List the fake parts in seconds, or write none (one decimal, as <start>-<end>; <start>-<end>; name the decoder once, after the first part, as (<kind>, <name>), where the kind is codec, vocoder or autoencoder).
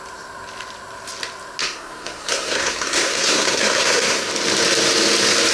1.6-4.3 (codec, SNAC)